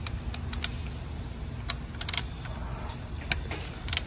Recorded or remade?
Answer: recorded